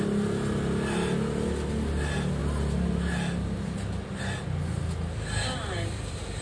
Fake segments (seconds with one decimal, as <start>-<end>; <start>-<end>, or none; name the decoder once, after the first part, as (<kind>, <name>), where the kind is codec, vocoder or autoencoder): none